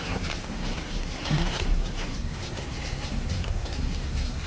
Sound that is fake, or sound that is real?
fake